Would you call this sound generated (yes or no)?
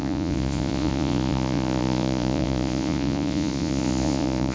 yes